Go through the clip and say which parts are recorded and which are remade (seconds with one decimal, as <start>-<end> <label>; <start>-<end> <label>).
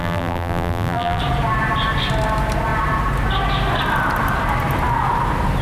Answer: 0.0-1.2 remade; 1.2-5.6 recorded